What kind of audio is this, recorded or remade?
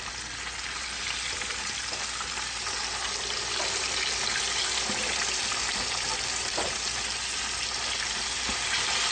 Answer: recorded